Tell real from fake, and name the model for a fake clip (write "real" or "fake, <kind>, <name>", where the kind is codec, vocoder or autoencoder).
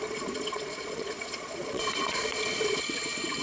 fake, vocoder, Vocos